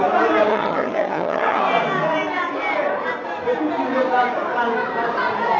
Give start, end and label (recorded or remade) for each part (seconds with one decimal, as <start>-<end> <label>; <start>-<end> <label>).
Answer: 0.0-0.5 recorded; 0.5-1.6 remade; 1.6-5.6 recorded